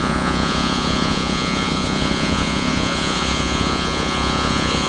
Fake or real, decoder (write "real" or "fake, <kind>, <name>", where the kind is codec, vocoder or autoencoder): fake, vocoder, Vocos